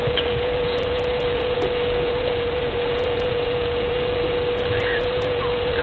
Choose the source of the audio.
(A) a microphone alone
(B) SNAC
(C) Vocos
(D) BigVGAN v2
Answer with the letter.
C